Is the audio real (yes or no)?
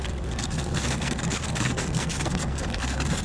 no